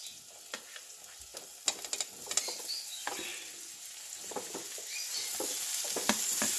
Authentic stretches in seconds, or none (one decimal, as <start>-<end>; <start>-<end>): 0.0-6.6